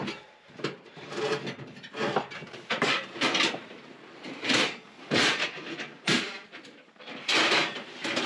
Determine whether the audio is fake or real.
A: fake